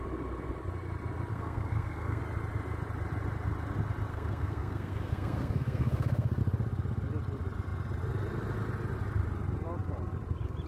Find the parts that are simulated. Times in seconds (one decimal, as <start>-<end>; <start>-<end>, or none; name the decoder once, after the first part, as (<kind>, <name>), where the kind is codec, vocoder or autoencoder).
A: 1.3-2.2 (codec, SNAC); 4.1-6.4